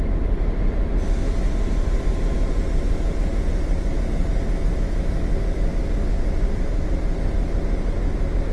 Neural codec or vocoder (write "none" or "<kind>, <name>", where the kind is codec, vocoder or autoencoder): none